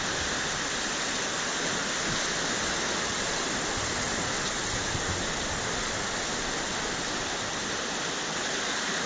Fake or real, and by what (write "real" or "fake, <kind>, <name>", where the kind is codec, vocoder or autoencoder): real